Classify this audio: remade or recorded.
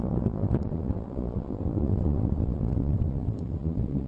remade